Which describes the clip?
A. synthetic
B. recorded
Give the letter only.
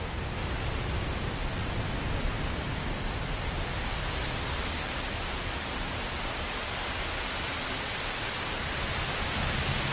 A